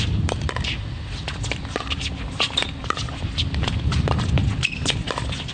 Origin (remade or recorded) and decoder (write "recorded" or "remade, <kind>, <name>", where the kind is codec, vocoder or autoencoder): remade, vocoder, BigVGAN v2